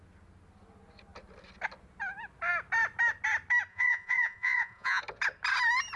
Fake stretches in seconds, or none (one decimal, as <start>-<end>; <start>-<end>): 3.7-5.0